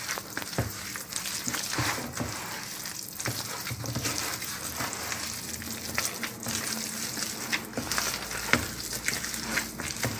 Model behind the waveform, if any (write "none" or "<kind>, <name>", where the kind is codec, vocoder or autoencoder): none